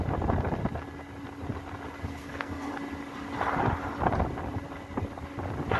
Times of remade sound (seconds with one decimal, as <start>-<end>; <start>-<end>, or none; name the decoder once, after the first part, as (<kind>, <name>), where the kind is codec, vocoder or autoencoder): 2.1-2.7 (codec, SNAC)